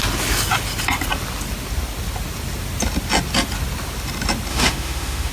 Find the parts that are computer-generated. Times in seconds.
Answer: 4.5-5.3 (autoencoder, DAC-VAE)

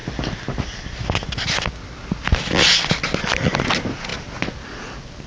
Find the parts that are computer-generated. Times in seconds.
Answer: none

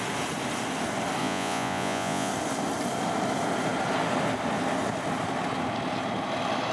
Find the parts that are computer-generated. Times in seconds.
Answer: 1.2-2.3 (vocoder, Vocos)

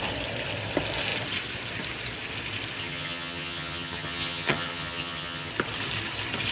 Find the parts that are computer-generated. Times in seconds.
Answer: 2.8-5.5 (vocoder, HiFi-GAN)

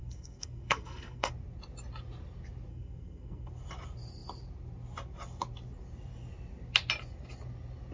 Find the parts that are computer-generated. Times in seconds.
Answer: 0.0-1.3 (codec, SNAC); 2.7-3.5